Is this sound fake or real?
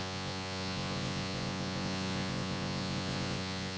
fake